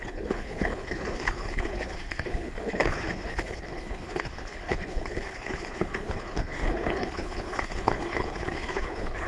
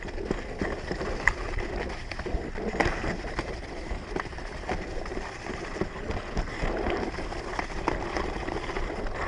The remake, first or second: first